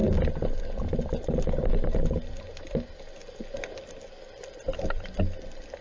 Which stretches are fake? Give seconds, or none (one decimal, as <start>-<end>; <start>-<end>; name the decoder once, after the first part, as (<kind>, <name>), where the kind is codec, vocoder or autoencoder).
none